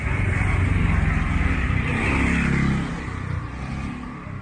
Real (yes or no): yes